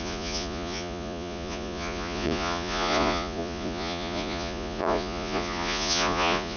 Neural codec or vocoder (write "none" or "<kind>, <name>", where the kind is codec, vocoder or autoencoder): vocoder, Vocos